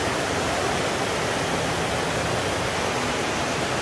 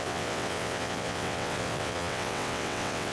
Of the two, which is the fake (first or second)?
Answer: second